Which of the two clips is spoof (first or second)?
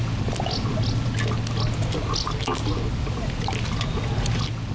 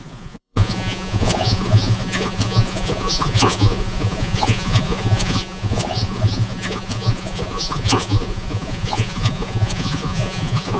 second